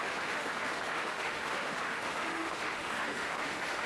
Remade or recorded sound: remade